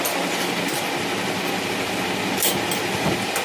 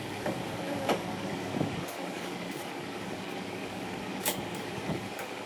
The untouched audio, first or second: first